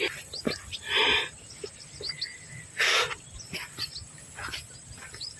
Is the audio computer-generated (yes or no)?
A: no